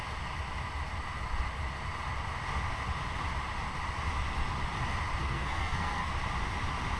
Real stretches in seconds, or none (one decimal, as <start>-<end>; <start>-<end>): 0.0-5.2; 6.1-7.0